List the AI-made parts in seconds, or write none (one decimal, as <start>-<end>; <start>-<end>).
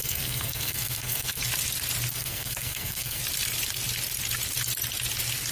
0.0-1.4; 2.1-3.2